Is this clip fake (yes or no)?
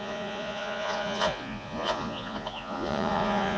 yes